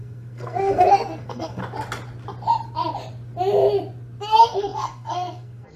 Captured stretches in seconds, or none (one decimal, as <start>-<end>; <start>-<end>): 1.6-4.2